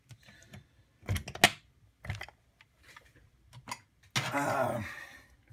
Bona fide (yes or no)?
yes